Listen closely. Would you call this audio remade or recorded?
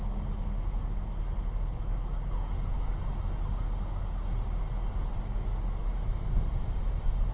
recorded